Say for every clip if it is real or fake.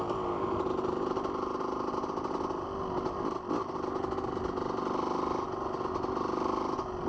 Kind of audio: real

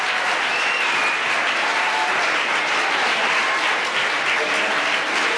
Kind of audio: real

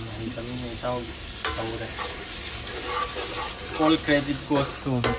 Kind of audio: real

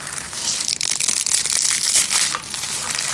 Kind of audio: real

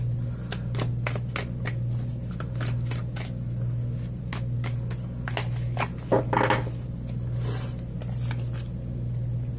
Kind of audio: real